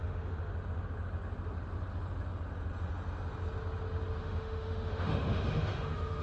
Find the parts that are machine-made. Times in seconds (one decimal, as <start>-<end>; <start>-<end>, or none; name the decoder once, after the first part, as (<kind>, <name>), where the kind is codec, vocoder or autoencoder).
0.0-0.5 (autoencoder, DAC-VAE); 4.2-6.2